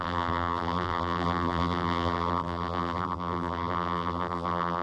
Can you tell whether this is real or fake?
fake